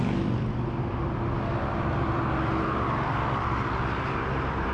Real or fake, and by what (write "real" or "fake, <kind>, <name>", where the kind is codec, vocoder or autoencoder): real